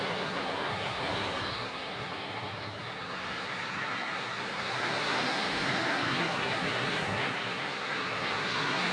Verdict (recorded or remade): remade